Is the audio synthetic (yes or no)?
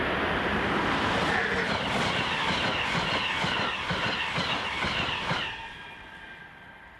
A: no